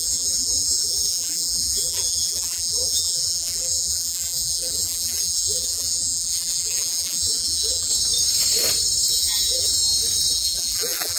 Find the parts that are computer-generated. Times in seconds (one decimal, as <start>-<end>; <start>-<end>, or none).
0.0-7.9; 9.1-9.8; 10.3-11.2